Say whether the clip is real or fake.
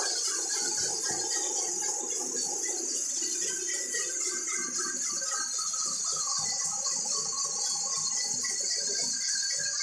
real